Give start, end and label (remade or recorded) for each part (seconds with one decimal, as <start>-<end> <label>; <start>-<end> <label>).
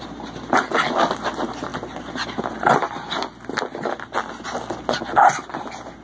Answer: 0.0-6.0 recorded